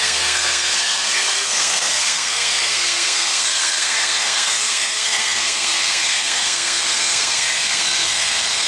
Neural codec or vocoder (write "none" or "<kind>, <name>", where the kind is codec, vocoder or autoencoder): codec, SNAC